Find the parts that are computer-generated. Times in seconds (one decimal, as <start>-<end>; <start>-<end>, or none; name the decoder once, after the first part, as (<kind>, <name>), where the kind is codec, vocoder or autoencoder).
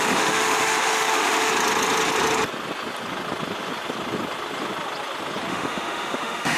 0.0-1.5 (autoencoder, DAC-VAE); 5.5-6.6